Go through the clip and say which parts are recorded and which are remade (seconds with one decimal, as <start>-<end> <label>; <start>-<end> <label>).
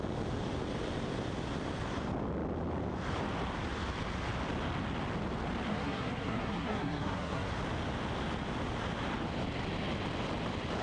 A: 0.0-5.7 recorded; 5.7-7.5 remade; 7.5-10.8 recorded